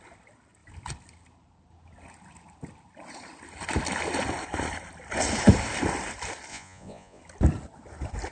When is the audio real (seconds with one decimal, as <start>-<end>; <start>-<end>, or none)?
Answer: 0.0-6.5; 7.2-8.3